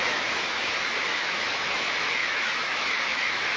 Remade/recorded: remade